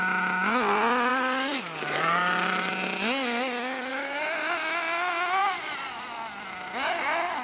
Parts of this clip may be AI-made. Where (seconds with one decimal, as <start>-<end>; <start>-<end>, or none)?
1.1-2.7; 3.9-4.6; 5.4-6.0